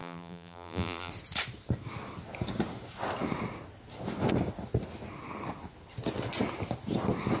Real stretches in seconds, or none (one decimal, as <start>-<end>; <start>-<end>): 1.1-7.4